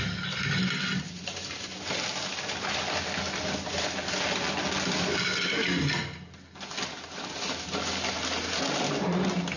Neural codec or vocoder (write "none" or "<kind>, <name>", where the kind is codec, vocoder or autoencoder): none